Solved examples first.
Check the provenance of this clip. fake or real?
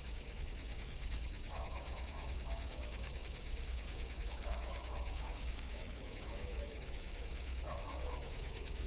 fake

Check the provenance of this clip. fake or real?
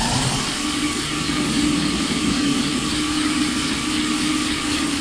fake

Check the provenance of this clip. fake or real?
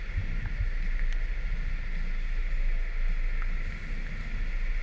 real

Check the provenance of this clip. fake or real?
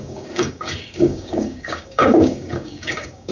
fake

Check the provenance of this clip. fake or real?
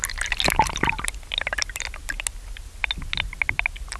real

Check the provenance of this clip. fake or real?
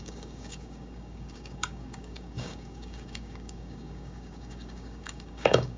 fake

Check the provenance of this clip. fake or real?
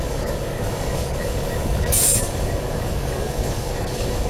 fake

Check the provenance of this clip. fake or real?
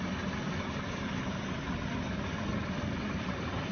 real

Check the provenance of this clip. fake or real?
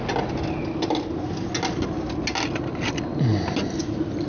real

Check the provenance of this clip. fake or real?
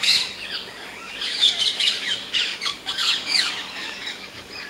fake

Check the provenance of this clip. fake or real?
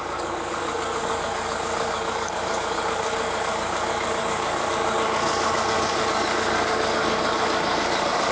fake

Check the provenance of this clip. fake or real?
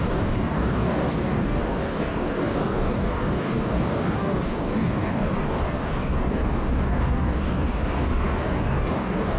fake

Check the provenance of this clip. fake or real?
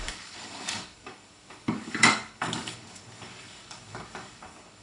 fake